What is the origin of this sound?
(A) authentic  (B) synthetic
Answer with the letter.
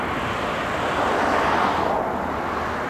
A